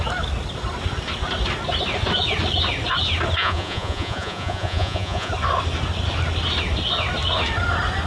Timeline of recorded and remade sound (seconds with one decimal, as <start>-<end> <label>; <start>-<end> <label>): 0.0-3.4 recorded; 3.4-5.3 remade; 5.3-8.1 recorded